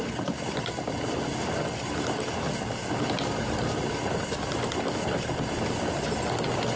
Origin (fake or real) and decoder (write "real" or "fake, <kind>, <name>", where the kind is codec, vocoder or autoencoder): real